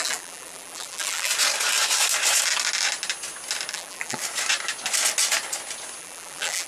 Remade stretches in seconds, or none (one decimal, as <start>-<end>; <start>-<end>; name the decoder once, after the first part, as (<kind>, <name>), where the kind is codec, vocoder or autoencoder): 0.0-1.3 (vocoder, BigVGAN v2); 3.7-4.2; 6.0-6.7